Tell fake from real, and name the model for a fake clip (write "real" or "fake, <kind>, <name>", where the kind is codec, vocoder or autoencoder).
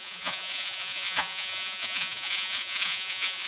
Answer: fake, vocoder, Vocos